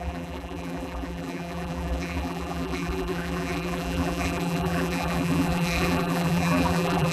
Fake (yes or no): yes